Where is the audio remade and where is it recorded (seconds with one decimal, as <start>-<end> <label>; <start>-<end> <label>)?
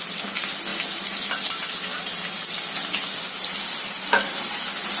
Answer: 0.0-5.0 recorded